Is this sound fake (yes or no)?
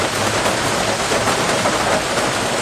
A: no